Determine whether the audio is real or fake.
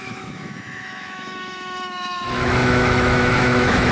fake